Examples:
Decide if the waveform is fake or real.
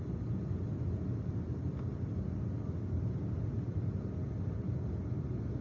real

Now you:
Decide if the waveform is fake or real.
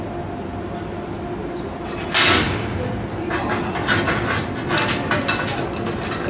real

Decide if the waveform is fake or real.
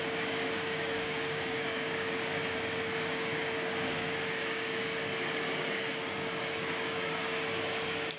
fake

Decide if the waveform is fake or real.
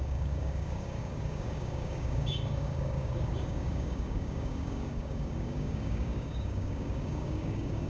fake